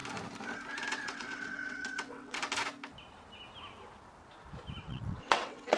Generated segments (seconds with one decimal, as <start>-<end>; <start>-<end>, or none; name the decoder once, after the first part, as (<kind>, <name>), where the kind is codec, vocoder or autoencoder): 0.9-2.4 (vocoder, WaveNeXt); 4.8-5.8